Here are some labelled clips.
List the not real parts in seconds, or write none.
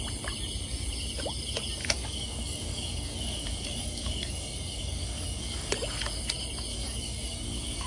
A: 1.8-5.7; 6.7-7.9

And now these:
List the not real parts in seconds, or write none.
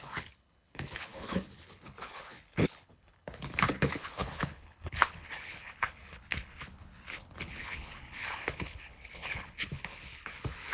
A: 0.0-10.7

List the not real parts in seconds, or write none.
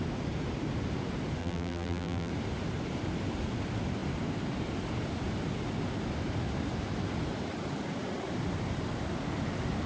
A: 1.4-2.3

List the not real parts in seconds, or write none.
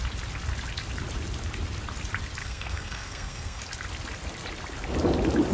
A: 2.4-3.6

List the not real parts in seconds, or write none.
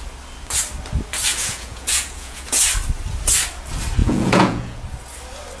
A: 1.3-2.6; 4.0-4.8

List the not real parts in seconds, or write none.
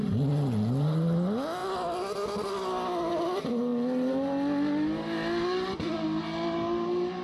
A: none